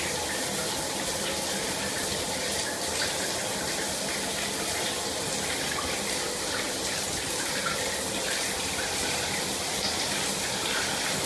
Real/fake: real